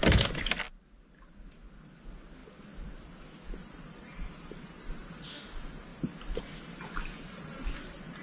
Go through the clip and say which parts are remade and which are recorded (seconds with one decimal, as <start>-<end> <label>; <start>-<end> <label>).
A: 0.0-8.2 recorded